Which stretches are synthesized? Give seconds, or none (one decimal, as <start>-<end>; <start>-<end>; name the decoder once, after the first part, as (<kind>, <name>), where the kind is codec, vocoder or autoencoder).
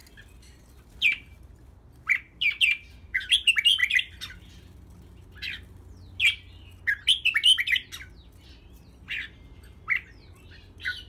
3.8-4.4 (vocoder, BigVGAN v2)